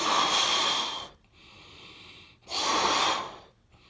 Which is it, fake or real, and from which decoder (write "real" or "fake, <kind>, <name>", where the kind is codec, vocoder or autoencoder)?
real